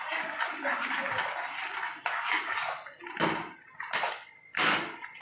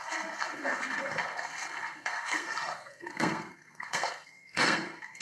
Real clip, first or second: first